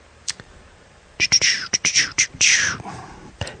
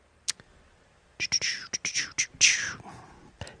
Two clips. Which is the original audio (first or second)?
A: second